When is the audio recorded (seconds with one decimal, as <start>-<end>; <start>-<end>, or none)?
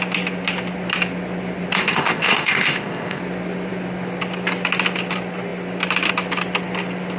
0.0-1.8; 3.2-7.2